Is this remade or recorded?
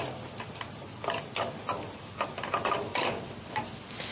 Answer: recorded